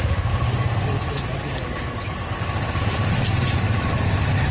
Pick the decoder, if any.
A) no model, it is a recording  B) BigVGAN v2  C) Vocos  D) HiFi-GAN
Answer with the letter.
A